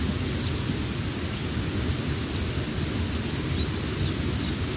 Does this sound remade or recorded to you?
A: recorded